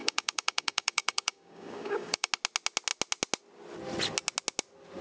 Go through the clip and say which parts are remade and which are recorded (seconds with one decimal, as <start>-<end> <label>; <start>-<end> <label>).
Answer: 0.0-2.3 remade; 2.3-5.0 recorded